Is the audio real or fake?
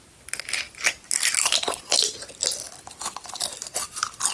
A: real